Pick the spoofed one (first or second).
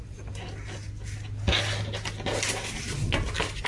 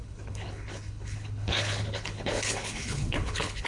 second